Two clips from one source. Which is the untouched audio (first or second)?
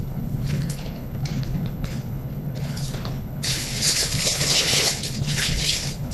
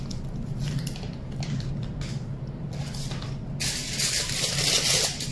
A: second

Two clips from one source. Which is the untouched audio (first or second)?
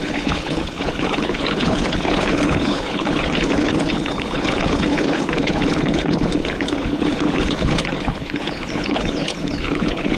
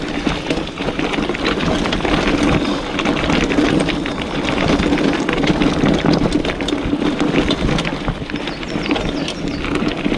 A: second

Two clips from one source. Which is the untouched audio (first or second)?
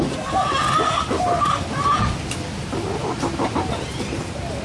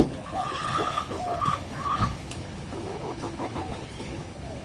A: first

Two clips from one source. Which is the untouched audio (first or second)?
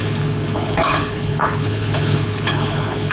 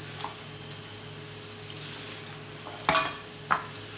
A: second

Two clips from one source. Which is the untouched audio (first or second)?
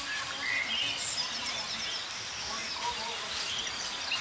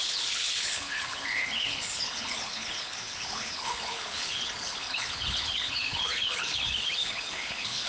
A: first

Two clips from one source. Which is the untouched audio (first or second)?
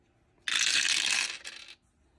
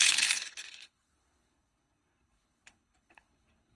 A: first